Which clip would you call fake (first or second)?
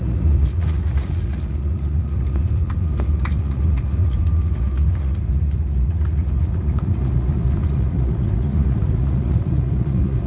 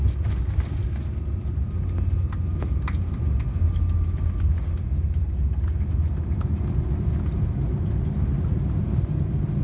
first